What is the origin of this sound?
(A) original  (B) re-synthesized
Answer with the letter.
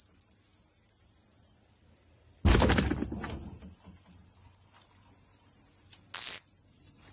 A